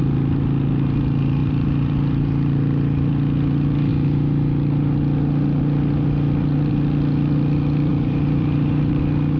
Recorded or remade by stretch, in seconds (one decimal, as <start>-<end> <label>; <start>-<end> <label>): 0.0-1.4 recorded; 1.4-3.1 remade; 3.1-7.9 recorded; 7.9-9.0 remade; 9.0-9.4 recorded